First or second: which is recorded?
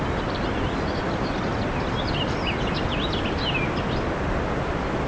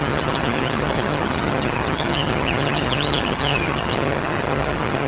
first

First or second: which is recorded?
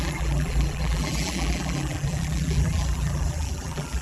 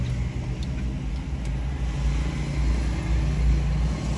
second